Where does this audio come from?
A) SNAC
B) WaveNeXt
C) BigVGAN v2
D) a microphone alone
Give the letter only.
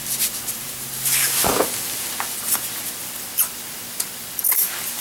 D